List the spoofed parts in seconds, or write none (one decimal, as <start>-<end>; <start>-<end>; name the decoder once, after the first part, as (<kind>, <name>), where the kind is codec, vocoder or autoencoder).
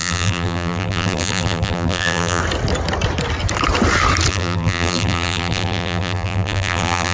0.0-2.4 (vocoder, BigVGAN v2); 4.3-7.1